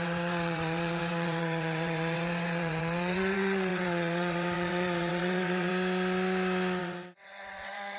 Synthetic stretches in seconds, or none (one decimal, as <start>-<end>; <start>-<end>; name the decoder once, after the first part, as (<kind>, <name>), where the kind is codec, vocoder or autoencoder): 0.0-5.7 (vocoder, WaveNeXt); 6.8-8.0